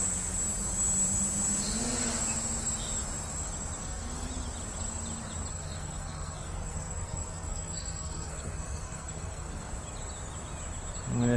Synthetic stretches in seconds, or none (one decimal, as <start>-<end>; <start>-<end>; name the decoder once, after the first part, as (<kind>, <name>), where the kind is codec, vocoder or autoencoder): 3.8-4.3 (codec, SNAC); 5.5-9.7